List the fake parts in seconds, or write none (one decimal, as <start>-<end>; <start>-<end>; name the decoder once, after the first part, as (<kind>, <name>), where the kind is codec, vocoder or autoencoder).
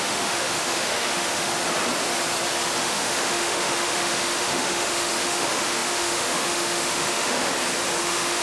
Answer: 0.0-1.5 (autoencoder, DAC-VAE); 2.8-7.5; 8.0-8.4